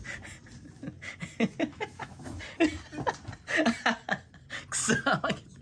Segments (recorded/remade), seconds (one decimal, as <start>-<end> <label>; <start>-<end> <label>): 0.0-1.7 recorded; 1.7-2.4 remade; 2.4-5.6 recorded